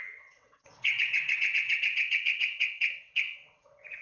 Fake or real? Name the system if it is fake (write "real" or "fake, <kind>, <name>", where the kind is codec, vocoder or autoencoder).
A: fake, vocoder, WaveNeXt